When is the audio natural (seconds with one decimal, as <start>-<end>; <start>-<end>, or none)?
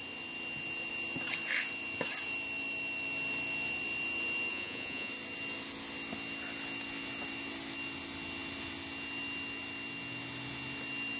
0.0-4.5; 5.1-11.2